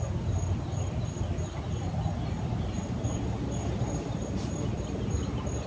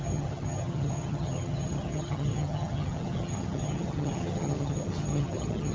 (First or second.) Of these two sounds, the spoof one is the second